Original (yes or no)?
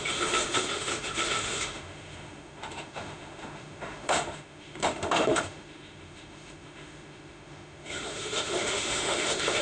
no